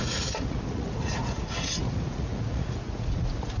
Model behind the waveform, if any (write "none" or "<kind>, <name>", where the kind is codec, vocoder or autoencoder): vocoder, Vocos